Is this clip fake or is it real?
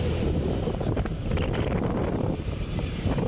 fake